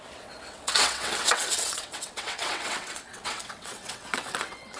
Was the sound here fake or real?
fake